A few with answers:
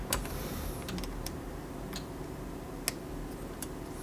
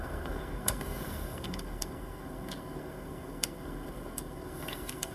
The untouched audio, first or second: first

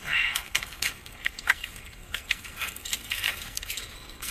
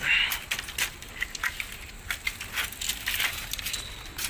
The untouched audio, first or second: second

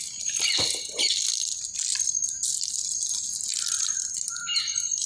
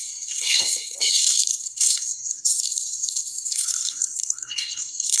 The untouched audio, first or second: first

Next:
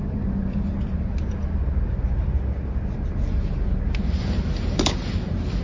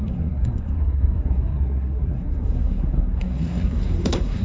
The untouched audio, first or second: first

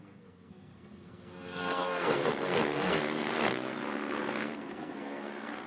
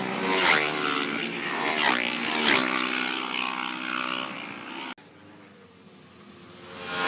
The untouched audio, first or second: second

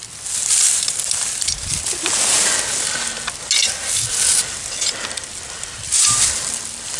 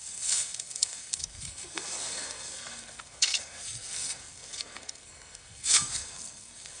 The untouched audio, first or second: first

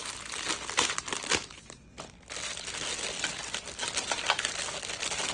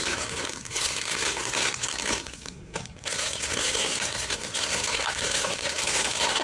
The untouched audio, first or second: first